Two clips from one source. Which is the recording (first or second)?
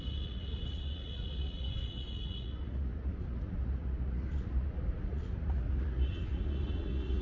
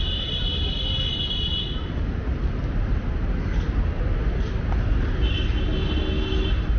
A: second